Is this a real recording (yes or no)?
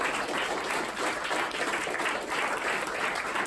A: yes